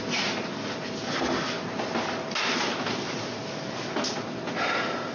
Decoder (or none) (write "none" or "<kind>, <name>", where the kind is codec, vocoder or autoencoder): none